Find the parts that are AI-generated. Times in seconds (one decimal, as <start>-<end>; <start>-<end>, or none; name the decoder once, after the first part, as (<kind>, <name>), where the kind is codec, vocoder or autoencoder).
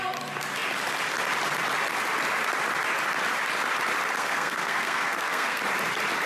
4.2-5.6 (codec, SNAC)